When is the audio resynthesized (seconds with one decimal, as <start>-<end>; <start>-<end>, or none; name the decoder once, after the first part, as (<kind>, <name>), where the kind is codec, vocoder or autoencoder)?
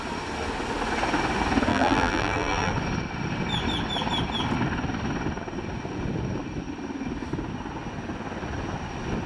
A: 1.7-2.7 (vocoder, BigVGAN v2)